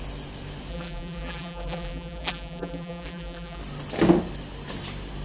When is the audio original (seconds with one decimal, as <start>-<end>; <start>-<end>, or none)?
0.0-0.7; 3.6-5.2